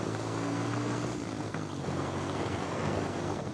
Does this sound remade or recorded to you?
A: remade